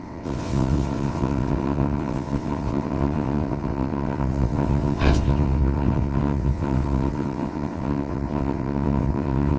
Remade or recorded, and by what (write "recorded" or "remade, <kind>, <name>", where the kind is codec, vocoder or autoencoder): remade, vocoder, WaveNeXt